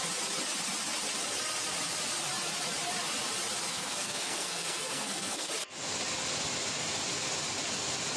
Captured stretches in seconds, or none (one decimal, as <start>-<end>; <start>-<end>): 0.0-3.7; 5.5-8.2